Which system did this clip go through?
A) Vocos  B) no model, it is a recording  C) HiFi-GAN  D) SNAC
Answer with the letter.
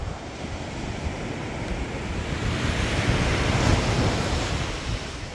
B